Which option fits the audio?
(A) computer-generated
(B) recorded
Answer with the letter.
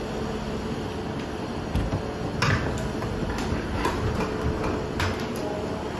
B